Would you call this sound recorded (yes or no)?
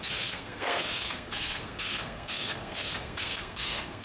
no